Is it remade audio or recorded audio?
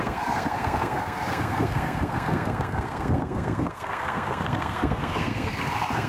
remade